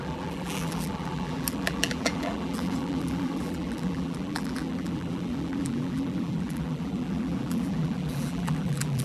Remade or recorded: remade